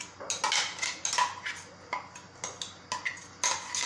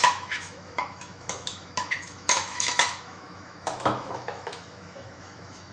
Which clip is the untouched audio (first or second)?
first